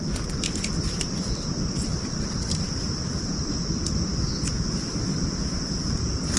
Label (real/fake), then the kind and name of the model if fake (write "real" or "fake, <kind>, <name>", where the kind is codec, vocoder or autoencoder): real